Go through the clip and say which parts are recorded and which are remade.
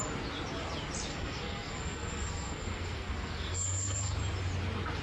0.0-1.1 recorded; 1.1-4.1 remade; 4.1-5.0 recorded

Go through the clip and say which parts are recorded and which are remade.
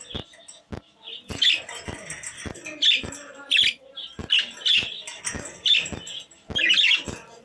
0.0-4.7 recorded; 4.7-5.2 remade; 5.2-7.4 recorded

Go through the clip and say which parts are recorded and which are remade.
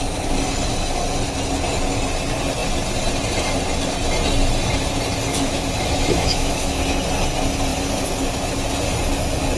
0.0-5.3 recorded; 5.3-6.8 remade; 6.8-9.6 recorded